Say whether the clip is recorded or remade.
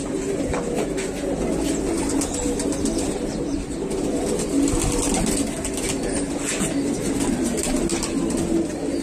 recorded